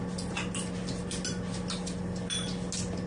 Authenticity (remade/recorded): recorded